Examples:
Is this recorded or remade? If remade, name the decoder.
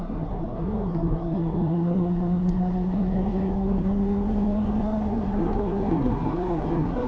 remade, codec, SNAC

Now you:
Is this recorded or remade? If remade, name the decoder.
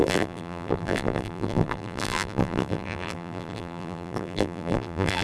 remade, vocoder, BigVGAN v2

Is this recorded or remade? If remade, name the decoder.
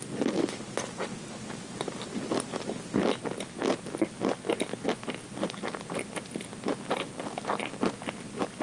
recorded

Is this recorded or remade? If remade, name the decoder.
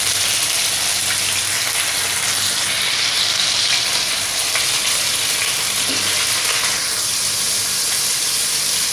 recorded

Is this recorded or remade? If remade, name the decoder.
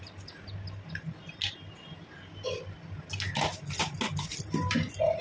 recorded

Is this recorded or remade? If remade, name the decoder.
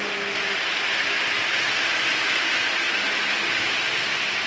recorded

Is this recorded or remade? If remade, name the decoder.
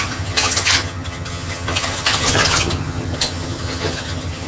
remade, vocoder, HiFi-GAN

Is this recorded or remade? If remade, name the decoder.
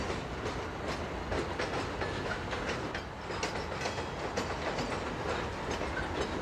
recorded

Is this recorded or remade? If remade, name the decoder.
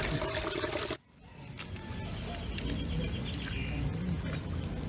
recorded